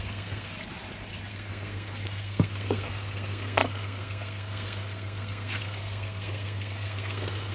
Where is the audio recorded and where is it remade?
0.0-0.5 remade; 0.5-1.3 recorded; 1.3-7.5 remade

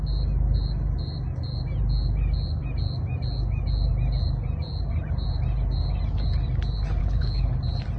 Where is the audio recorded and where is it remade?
0.0-7.0 recorded; 7.0-7.6 remade; 7.6-8.0 recorded